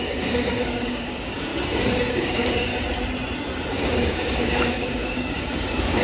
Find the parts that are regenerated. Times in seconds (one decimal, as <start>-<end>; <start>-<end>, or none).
0.0-1.5; 2.1-2.7; 3.7-6.0